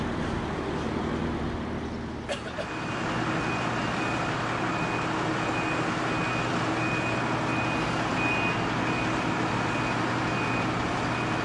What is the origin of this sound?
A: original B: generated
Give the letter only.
A